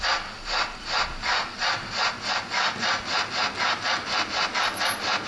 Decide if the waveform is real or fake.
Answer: real